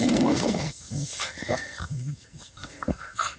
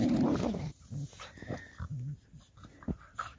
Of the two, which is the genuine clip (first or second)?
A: second